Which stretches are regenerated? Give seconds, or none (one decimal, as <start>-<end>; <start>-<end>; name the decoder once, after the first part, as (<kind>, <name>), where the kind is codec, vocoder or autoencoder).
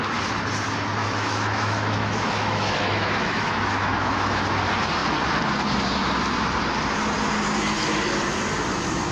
1.0-4.4 (autoencoder, DAC-VAE)